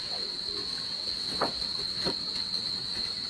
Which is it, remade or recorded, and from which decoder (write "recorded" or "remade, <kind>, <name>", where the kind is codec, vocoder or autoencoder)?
remade, vocoder, WaveNeXt